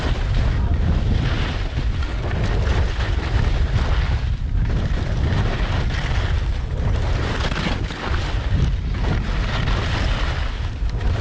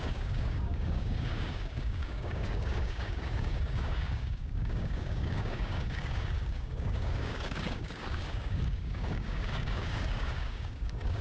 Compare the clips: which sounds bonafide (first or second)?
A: first